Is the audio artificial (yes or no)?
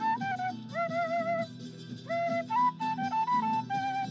no